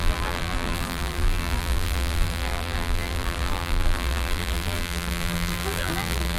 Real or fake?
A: fake